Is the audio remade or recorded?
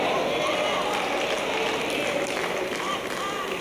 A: recorded